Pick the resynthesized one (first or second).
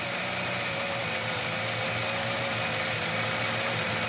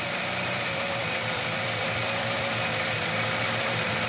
second